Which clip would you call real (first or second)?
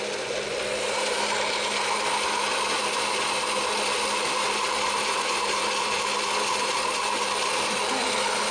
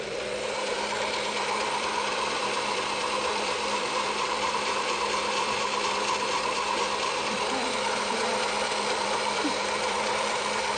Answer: first